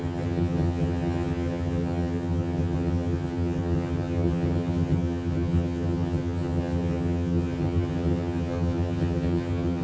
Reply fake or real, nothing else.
fake